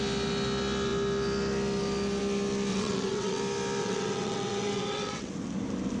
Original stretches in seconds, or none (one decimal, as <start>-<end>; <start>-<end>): 0.0-2.7; 3.4-3.8; 5.3-6.0